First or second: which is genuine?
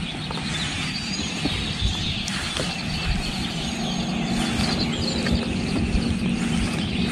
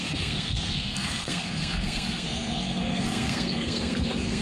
first